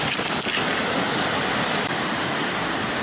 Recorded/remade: remade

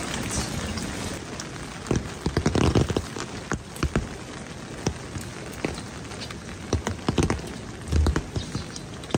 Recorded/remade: recorded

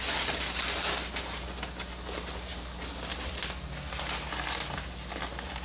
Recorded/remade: recorded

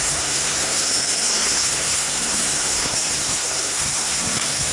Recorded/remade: remade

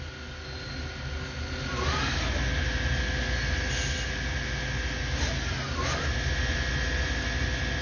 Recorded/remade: recorded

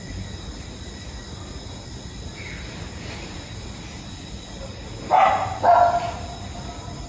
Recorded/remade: recorded